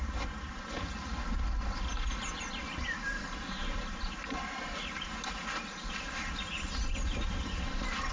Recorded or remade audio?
recorded